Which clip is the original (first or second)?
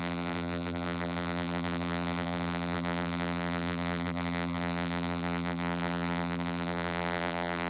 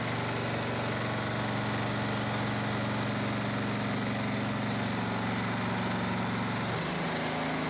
second